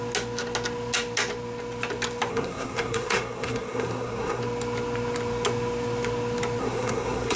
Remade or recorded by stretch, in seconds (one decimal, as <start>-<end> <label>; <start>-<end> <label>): 0.0-2.3 recorded; 2.3-4.4 remade; 4.4-6.6 recorded; 6.6-7.4 remade